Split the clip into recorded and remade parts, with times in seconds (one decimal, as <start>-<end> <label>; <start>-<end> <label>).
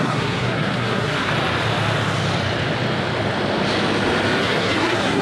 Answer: 0.0-1.3 remade; 1.3-4.4 recorded; 4.4-5.2 remade